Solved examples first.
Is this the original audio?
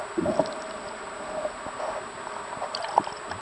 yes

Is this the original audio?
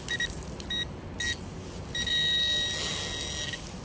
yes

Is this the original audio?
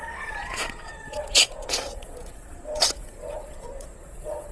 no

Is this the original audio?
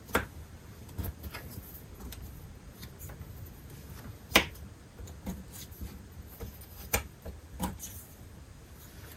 yes